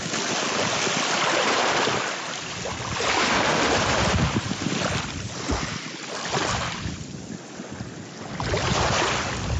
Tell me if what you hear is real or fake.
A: real